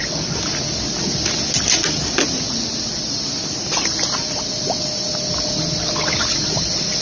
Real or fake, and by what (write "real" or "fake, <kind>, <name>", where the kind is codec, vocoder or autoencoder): real